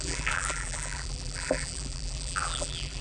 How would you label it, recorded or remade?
remade